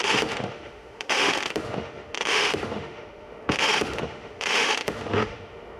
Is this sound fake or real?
fake